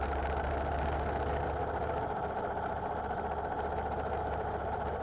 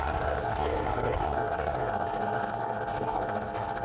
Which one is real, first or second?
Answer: first